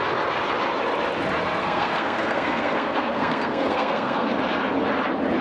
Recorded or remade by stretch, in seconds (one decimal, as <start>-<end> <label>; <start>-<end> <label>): 0.0-1.6 recorded; 1.6-4.3 remade; 4.3-5.4 recorded